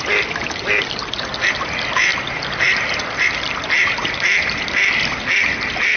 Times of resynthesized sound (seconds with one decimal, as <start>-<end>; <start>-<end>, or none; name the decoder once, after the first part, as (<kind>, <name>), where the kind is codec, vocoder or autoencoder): none